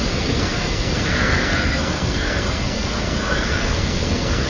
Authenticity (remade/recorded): remade